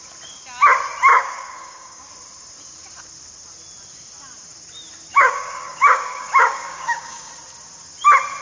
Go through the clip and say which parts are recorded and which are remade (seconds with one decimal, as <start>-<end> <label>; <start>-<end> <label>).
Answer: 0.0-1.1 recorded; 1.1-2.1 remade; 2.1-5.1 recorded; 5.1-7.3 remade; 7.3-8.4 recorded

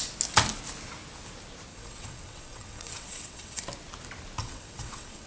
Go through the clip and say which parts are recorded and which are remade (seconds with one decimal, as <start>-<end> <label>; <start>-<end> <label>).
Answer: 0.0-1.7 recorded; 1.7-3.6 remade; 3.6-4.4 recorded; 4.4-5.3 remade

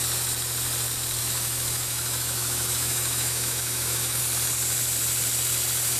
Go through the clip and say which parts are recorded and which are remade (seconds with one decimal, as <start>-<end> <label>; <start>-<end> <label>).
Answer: 0.0-1.2 recorded; 1.2-4.2 remade; 4.2-6.0 recorded

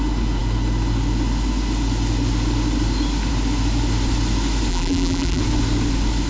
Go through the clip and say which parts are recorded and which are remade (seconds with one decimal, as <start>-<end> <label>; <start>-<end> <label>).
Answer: 0.0-4.7 recorded; 4.7-5.4 remade; 5.4-6.3 recorded

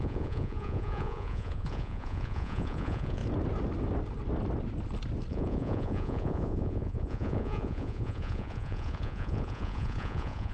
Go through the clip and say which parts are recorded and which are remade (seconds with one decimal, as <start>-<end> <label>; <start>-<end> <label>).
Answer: 0.0-3.2 remade; 3.2-5.3 recorded; 5.3-10.5 remade

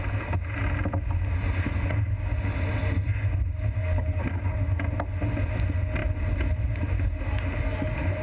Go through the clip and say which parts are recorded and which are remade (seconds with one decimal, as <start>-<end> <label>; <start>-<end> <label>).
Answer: 0.0-8.2 recorded

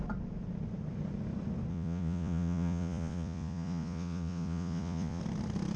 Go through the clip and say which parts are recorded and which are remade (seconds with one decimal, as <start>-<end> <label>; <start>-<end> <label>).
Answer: 0.0-1.7 recorded; 1.7-5.2 remade; 5.2-5.8 recorded

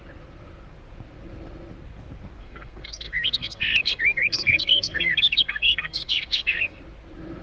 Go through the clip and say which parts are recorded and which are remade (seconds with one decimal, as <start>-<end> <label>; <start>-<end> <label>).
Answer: 0.0-2.4 recorded; 2.4-6.8 remade; 6.8-7.4 recorded